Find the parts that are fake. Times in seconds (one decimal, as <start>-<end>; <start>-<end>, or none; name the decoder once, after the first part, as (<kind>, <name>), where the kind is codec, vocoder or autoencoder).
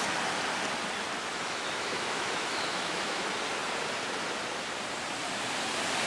1.3-3.2 (autoencoder, DAC-VAE)